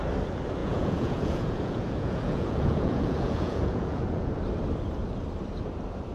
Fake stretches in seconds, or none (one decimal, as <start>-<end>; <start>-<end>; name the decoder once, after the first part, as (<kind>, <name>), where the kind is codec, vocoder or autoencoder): 0.6-4.3 (vocoder, Vocos)